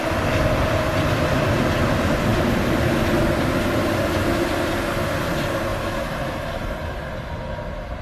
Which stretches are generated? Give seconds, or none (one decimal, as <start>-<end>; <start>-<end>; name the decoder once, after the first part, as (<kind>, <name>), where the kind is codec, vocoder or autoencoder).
none